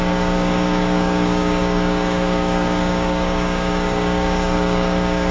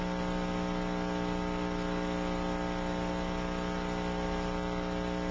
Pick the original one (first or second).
second